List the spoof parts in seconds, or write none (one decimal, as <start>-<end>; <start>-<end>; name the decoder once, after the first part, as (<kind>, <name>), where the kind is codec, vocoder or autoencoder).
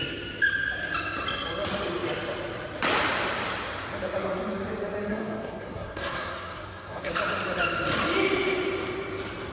5.1-7.1 (codec, SNAC)